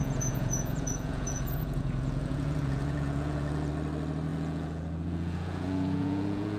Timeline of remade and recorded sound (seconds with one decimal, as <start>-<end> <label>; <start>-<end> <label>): 0.0-3.7 remade; 3.7-4.3 recorded; 4.3-6.6 remade